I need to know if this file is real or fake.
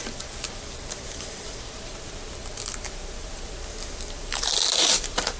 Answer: fake